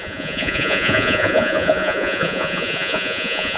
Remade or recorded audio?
remade